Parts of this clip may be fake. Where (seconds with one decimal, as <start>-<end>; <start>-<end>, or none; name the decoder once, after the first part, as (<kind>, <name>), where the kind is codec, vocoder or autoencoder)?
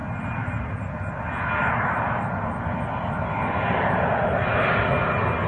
1.6-4.5 (vocoder, BigVGAN v2)